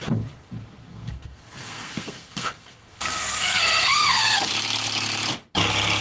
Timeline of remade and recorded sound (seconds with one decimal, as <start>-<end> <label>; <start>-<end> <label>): 0.0-0.9 recorded; 0.9-4.5 remade; 4.5-6.0 recorded